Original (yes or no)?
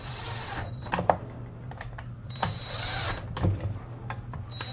no